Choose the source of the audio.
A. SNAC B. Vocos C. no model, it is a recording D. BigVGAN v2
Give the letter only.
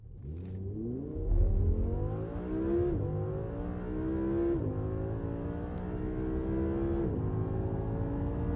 C